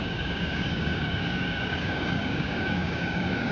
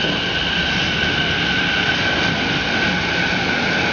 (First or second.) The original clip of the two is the second